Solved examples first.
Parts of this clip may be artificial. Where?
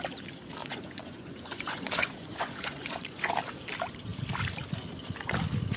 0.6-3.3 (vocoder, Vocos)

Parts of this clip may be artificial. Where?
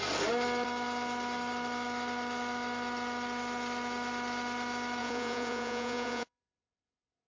5.0-7.3 (vocoder, Vocos)